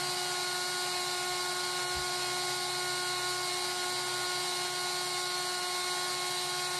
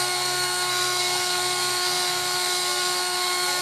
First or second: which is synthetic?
second